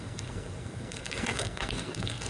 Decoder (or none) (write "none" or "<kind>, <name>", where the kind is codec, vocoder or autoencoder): codec, SNAC